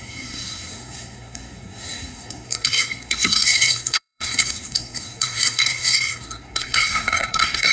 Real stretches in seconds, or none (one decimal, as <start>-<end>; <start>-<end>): none